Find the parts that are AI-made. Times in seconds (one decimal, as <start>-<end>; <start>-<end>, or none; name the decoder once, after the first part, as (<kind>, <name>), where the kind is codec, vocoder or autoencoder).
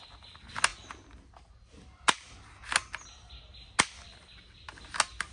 none